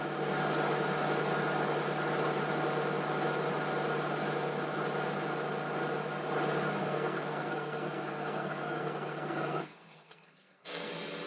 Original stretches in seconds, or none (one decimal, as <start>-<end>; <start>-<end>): 0.0-6.8; 10.9-11.3